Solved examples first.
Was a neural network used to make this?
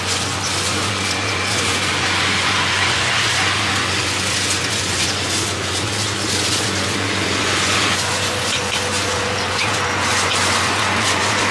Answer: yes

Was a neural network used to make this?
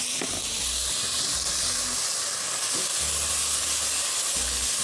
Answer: no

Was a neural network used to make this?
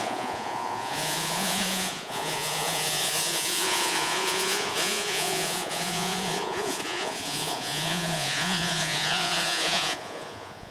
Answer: yes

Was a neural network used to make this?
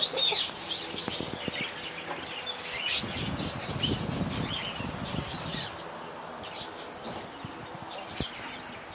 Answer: no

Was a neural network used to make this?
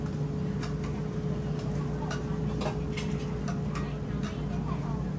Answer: no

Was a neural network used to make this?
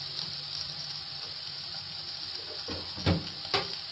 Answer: no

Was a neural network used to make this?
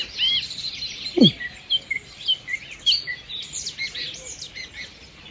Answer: no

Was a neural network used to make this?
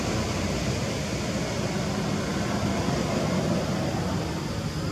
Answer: no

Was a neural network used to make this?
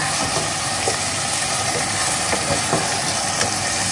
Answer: no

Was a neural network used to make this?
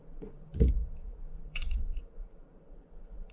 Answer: yes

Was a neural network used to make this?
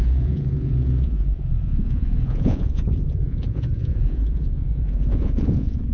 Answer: yes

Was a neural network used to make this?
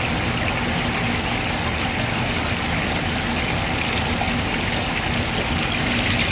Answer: no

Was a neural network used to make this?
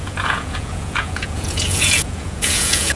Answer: yes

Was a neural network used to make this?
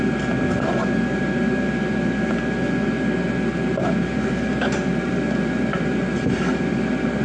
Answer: no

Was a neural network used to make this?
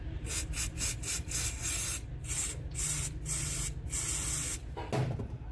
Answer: no